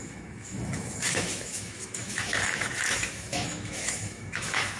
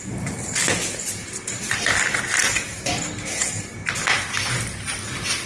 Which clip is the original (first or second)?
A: second